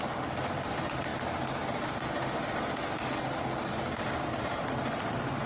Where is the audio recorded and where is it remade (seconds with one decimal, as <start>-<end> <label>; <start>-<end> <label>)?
0.0-5.5 recorded